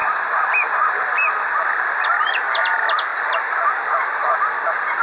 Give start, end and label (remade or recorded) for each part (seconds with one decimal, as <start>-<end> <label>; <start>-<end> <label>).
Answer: 0.0-1.7 remade; 1.7-5.0 recorded